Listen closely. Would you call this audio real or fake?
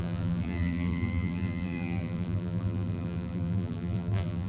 fake